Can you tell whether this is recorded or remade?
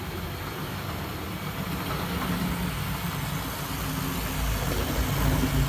recorded